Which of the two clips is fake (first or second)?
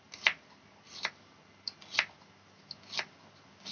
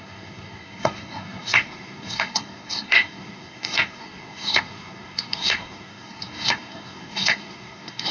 second